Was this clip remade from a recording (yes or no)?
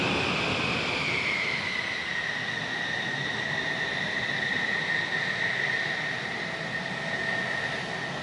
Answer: no